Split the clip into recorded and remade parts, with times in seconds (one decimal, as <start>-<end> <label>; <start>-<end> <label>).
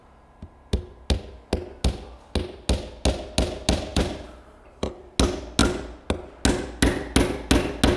0.0-3.9 recorded; 3.9-4.9 remade; 4.9-8.0 recorded